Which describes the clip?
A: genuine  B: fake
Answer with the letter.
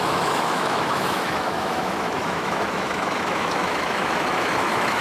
B